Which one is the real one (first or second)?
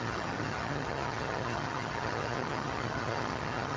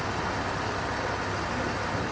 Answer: second